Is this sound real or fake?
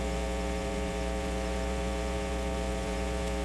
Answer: fake